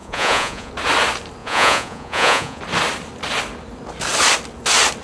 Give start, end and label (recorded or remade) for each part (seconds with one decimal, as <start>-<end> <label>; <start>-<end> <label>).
0.0-0.7 remade; 0.7-1.4 recorded; 1.4-2.6 remade; 2.6-5.0 recorded